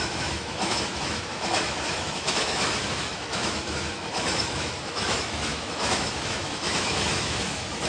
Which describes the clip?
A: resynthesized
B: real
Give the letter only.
A